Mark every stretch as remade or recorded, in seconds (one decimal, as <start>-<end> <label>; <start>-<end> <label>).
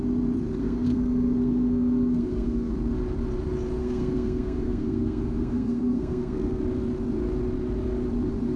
0.0-0.6 recorded; 0.6-2.7 remade; 2.7-3.8 recorded; 3.8-6.6 remade; 6.6-8.6 recorded